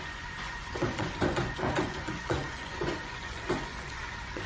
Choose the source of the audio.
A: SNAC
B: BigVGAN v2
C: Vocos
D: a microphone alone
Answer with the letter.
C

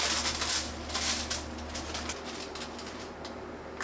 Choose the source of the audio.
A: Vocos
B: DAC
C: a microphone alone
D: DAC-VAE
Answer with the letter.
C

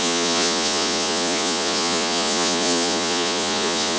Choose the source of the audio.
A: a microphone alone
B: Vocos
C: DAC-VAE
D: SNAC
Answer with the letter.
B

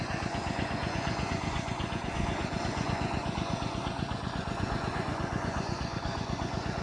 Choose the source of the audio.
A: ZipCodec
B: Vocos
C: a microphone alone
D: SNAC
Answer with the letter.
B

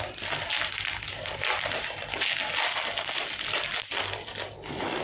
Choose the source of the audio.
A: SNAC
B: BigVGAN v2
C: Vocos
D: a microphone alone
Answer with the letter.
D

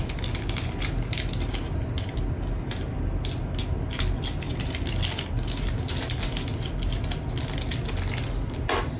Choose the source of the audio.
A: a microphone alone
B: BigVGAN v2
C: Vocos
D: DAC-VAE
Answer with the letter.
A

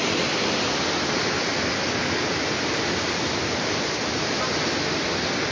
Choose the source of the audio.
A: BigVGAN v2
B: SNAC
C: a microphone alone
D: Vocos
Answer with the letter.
C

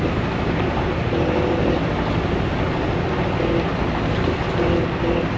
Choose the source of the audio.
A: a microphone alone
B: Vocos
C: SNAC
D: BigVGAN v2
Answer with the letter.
A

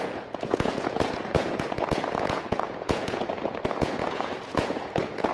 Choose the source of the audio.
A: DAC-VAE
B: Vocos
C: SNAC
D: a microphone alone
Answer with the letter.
B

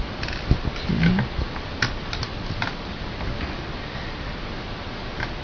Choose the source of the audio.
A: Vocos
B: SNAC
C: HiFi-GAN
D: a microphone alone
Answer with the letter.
D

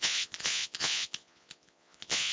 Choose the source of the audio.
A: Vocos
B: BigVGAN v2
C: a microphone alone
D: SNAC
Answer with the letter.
A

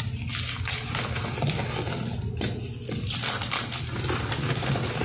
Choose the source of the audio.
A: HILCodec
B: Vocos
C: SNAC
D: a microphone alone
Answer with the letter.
D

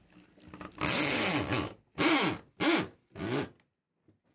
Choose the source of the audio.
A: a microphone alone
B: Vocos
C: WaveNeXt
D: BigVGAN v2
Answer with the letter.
A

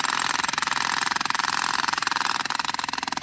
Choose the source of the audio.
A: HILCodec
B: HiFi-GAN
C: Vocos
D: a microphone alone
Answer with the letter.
D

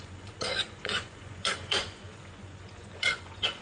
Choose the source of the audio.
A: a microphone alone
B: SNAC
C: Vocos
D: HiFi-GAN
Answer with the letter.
C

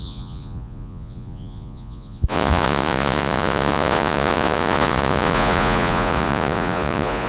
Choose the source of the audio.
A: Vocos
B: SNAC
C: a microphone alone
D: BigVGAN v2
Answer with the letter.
A